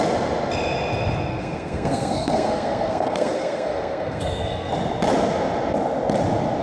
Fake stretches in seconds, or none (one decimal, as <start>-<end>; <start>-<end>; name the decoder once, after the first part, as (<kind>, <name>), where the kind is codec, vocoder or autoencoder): 1.3-4.7 (codec, SNAC)